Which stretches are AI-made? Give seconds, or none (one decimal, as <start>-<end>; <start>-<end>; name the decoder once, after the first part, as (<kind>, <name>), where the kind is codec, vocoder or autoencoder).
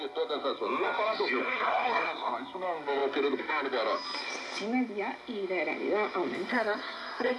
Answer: 1.4-2.3 (codec, SNAC); 6.5-7.4